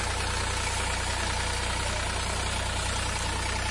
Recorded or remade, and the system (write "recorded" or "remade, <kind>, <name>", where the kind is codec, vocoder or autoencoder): recorded